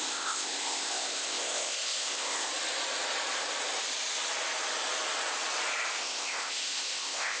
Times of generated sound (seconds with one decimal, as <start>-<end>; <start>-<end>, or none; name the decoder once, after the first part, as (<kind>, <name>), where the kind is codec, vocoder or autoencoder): 0.0-2.5 (codec, ZipCodec); 6.0-7.4